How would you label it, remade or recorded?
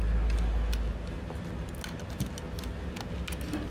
recorded